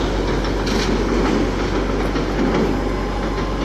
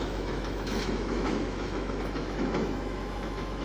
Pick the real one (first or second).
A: first